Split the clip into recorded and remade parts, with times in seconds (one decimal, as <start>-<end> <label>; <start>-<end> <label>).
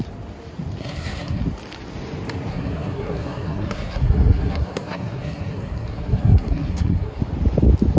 0.0-0.8 recorded; 0.8-1.4 remade; 1.4-2.5 recorded; 2.5-7.2 remade; 7.2-8.0 recorded